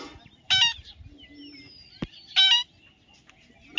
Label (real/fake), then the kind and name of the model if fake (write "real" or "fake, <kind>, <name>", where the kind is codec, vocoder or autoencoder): real